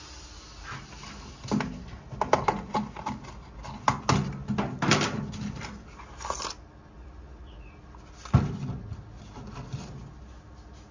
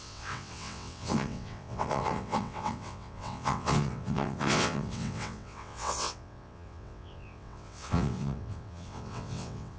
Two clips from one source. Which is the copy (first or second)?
second